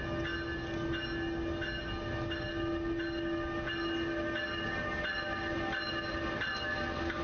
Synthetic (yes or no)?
no